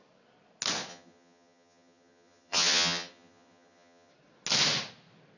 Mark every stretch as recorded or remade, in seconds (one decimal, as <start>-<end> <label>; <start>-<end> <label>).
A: 0.0-0.9 recorded; 0.9-4.1 remade; 4.1-5.4 recorded